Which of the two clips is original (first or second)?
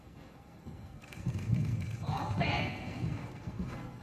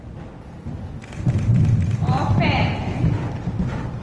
second